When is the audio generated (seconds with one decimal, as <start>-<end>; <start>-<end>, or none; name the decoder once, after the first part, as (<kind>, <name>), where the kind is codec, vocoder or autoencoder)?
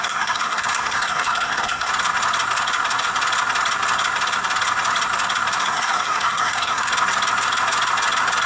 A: 0.0-1.9 (codec, SNAC); 5.6-6.9